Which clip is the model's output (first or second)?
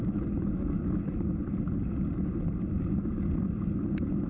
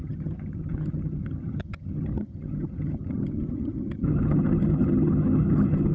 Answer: second